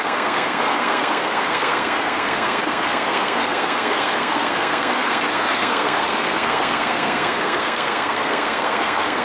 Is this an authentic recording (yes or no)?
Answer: no